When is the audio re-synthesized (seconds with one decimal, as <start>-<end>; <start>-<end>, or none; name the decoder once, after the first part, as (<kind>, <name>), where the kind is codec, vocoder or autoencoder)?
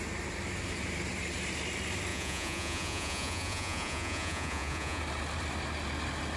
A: 2.1-5.0 (vocoder, Vocos)